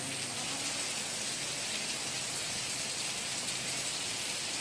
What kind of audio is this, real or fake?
real